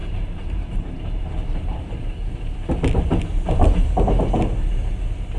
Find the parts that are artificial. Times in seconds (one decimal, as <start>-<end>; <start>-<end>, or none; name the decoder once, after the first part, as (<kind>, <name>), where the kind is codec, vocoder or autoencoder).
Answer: 0.0-2.3 (vocoder, BigVGAN v2)